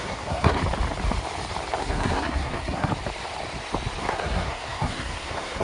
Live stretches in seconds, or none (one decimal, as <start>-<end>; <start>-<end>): 0.6-1.8; 2.9-4.0